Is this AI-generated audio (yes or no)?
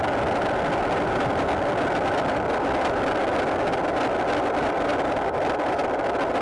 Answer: no